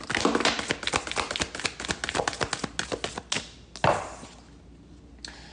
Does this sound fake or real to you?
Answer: real